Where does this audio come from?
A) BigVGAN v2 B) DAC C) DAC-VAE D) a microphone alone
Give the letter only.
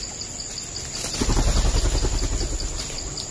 D